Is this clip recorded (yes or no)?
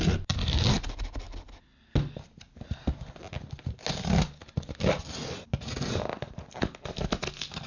yes